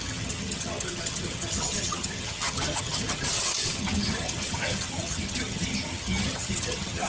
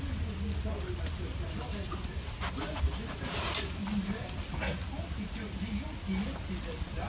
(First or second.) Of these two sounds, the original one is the second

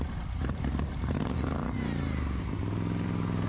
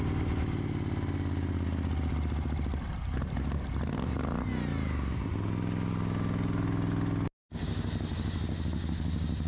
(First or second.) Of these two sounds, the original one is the second